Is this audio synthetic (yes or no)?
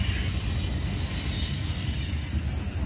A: no